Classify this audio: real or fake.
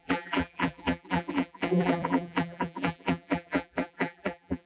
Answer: fake